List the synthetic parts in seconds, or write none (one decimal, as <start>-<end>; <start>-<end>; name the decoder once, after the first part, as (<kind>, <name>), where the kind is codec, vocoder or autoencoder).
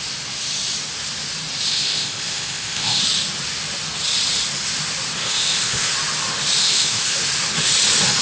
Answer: 1.7-3.0 (codec, ZipCodec); 5.2-5.9; 6.6-7.2